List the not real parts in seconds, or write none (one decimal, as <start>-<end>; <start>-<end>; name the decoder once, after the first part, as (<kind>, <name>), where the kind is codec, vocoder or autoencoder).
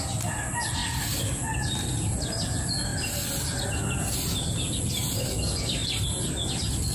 0.8-2.2 (vocoder, BigVGAN v2); 5.8-6.5